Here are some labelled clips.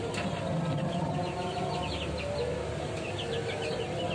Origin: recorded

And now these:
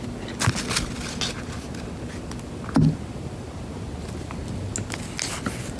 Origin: recorded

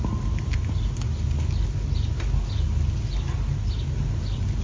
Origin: recorded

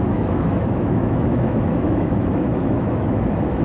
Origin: remade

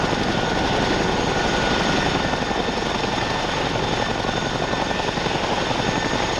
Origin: recorded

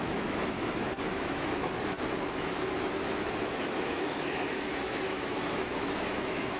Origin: remade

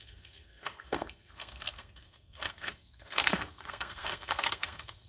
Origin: remade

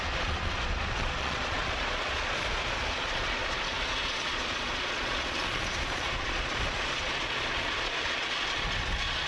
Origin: remade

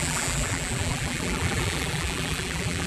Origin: remade